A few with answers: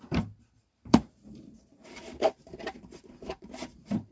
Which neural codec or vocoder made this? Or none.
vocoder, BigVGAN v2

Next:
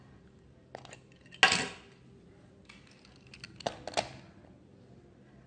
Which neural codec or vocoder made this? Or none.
none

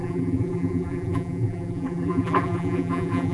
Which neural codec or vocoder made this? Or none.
vocoder, BigVGAN v2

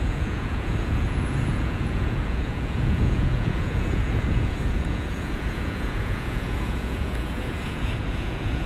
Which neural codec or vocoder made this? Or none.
vocoder, Vocos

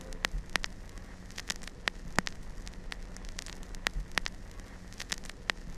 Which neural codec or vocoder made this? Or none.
none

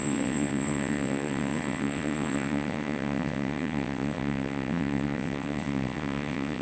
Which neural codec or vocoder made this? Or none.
vocoder, WaveNeXt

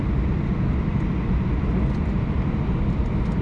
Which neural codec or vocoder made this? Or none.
none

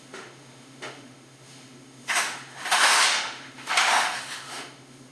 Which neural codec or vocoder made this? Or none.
autoencoder, DAC-VAE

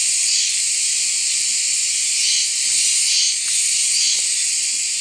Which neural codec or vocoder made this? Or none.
none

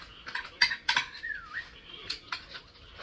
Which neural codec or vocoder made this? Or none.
none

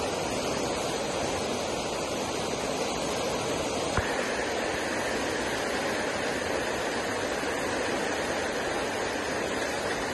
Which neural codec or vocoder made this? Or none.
none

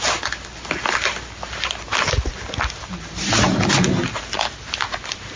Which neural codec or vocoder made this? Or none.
none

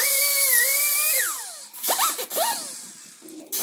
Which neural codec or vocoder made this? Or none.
none